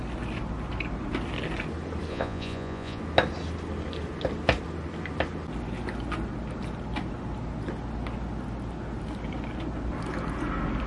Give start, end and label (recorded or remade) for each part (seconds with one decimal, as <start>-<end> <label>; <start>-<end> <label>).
0.0-2.1 recorded; 2.1-3.0 remade; 3.0-10.9 recorded